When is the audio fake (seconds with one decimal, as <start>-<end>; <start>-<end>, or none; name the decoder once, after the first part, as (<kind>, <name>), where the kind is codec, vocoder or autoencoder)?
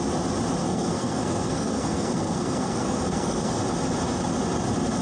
0.6-3.6 (codec, SNAC)